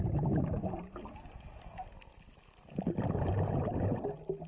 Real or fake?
real